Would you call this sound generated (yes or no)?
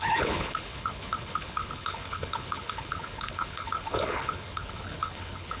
yes